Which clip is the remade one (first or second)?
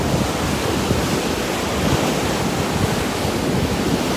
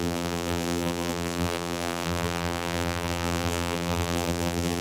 second